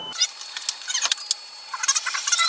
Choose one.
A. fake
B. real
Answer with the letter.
B